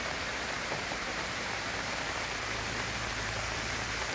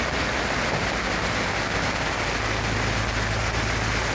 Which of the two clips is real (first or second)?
second